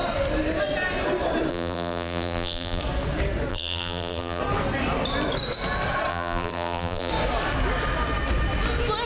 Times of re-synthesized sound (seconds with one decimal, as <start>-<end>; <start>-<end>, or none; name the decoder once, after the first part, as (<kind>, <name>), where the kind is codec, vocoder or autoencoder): 1.5-2.8 (vocoder, BigVGAN v2); 3.5-4.4; 6.1-7.1